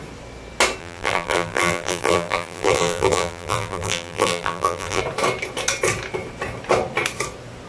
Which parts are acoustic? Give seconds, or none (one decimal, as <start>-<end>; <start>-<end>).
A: 0.0-0.8; 5.0-7.7